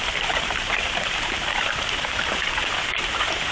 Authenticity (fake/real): fake